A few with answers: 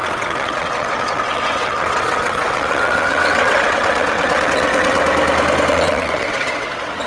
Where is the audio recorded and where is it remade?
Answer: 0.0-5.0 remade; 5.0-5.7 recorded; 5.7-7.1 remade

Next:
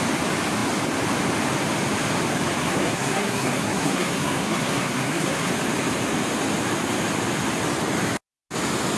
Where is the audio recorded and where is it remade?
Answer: 0.0-2.6 recorded; 2.6-5.5 remade; 5.5-9.0 recorded

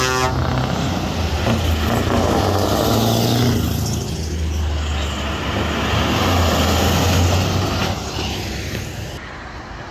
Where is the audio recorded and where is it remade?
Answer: 0.0-9.9 recorded

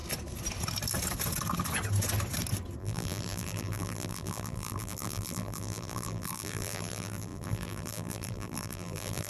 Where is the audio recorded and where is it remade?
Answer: 0.0-2.8 recorded; 2.8-9.3 remade

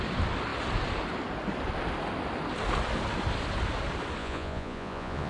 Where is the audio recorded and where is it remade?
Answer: 0.0-4.2 recorded; 4.2-5.3 remade

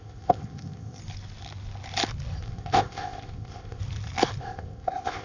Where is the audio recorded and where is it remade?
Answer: 0.0-1.0 remade; 1.0-2.4 recorded; 2.4-3.8 remade; 3.8-4.4 recorded; 4.4-5.2 remade

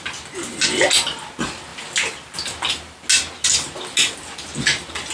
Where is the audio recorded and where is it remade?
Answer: 0.0-5.1 recorded